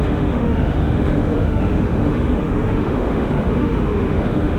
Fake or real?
fake